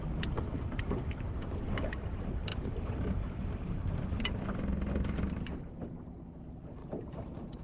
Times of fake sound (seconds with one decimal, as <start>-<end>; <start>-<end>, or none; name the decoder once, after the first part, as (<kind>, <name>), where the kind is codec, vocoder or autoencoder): 2.5-4.4 (vocoder, BigVGAN v2); 6.8-7.6